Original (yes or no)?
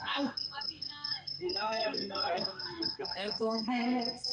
no